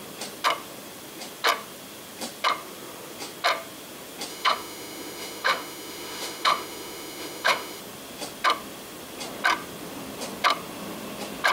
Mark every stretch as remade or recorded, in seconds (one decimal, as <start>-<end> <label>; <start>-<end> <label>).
0.0-4.3 recorded; 4.3-7.8 remade; 7.8-11.5 recorded